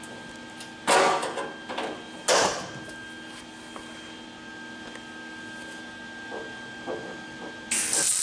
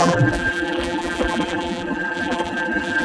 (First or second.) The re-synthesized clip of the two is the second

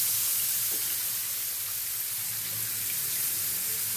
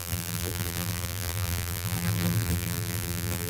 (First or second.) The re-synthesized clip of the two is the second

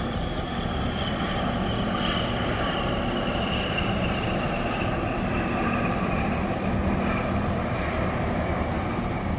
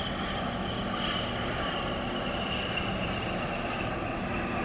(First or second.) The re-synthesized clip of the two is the first